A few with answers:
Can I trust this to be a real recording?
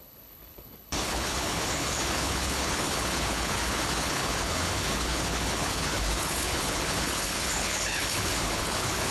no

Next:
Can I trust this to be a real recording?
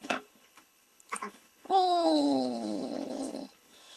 no